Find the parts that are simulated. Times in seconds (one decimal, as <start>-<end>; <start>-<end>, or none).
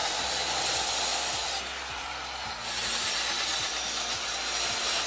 none